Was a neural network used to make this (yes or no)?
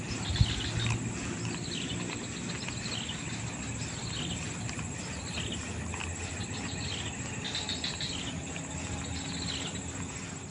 no